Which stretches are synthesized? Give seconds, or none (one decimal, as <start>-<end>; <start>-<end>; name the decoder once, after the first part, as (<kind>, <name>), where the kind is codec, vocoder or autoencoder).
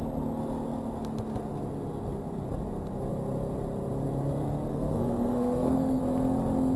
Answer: 4.7-6.0 (codec, SNAC)